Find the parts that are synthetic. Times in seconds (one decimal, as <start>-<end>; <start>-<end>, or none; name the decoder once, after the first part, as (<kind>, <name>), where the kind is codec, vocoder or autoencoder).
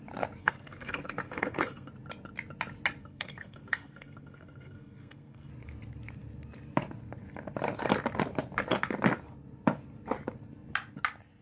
0.4-1.9 (codec, SNAC); 3.0-5.5